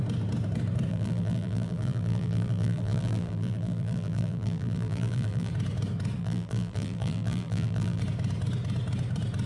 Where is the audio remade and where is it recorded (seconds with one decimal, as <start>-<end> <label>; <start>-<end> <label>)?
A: 0.0-0.9 recorded; 0.9-5.5 remade; 5.5-6.2 recorded; 6.2-8.0 remade; 8.0-9.5 recorded